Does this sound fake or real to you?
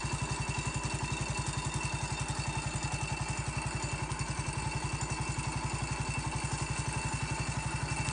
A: real